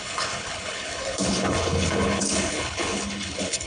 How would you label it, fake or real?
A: fake